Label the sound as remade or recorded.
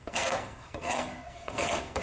remade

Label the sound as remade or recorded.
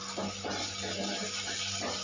recorded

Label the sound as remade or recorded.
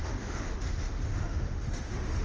remade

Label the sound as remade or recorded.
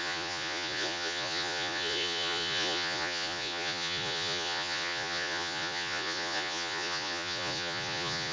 remade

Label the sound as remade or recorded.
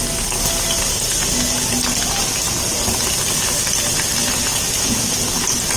recorded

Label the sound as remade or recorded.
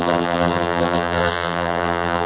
remade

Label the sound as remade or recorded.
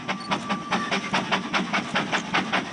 recorded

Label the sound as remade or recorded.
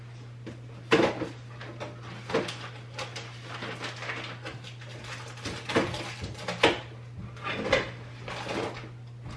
recorded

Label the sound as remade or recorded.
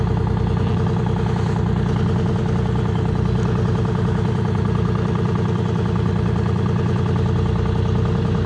recorded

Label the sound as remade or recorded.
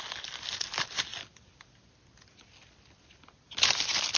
recorded